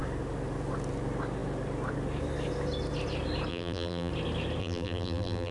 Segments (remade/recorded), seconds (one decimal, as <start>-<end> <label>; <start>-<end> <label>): 0.0-3.5 recorded; 3.5-4.1 remade; 4.1-4.6 recorded; 4.6-5.5 remade